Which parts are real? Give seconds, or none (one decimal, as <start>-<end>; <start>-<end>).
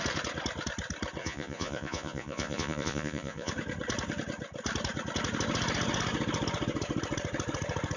0.0-1.2; 3.5-8.0